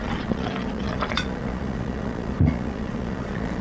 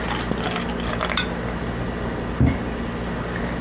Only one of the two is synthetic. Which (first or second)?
first